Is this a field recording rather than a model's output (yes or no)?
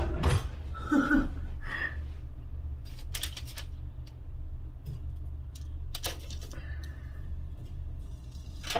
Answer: yes